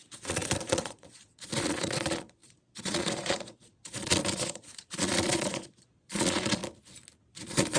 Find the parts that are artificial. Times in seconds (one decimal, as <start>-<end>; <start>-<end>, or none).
0.0-6.6; 7.3-7.8